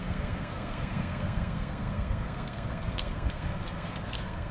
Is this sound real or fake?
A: fake